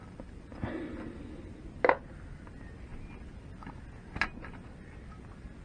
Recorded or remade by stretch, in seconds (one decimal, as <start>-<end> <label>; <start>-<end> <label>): 0.0-5.6 recorded